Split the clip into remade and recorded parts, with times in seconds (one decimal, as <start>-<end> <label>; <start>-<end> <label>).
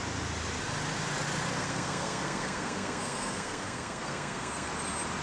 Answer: 0.0-1.6 recorded; 1.6-4.7 remade; 4.7-5.2 recorded